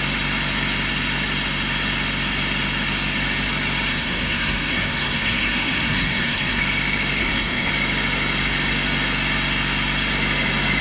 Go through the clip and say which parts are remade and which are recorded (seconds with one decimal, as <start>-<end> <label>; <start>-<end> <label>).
0.0-3.9 recorded; 3.9-6.6 remade; 6.6-7.2 recorded; 7.2-7.7 remade; 7.7-10.8 recorded